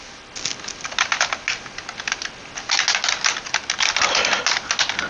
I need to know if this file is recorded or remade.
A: recorded